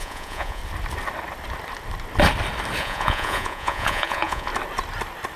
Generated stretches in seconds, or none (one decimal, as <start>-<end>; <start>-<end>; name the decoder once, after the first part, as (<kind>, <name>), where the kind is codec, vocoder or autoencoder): 0.0-0.6 (vocoder, Vocos); 2.8-4.5